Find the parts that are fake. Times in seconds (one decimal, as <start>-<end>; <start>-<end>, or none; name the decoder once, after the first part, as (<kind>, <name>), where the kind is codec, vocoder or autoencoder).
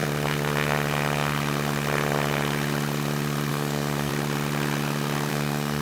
3.5-4.1 (codec, SNAC); 5.3-5.8